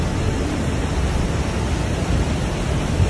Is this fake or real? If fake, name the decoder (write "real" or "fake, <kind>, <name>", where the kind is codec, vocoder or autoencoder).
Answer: real